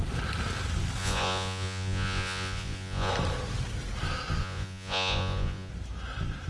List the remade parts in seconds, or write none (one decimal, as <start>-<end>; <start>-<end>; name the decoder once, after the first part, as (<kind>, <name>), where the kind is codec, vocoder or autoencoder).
1.0-3.1 (vocoder, Vocos); 4.4-5.7

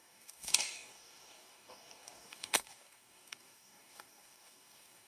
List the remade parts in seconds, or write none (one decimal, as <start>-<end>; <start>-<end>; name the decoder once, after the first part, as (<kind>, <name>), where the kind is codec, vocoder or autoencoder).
0.0-5.1 (codec, DAC)

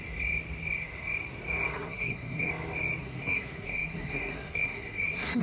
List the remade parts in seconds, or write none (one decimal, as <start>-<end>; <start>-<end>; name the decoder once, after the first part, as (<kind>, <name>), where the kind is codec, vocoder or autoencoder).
1.7-2.5 (codec, SNAC); 3.0-5.4